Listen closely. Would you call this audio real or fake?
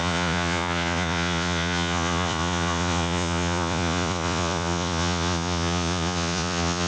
fake